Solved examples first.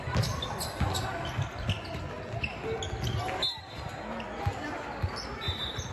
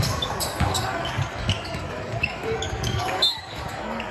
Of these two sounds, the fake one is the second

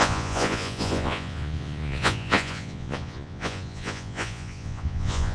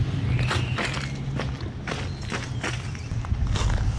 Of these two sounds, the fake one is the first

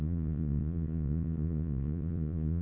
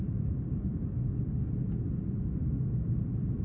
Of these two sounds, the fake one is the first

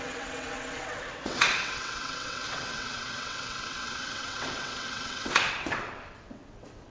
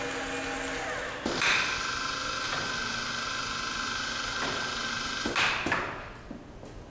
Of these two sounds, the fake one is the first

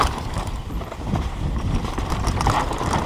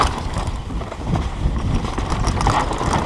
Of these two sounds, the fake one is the first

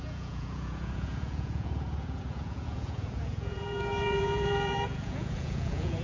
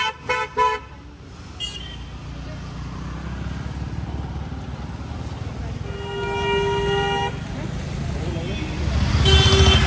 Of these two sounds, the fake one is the first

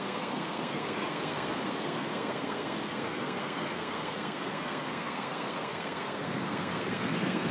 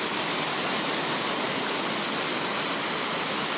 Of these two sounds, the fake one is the first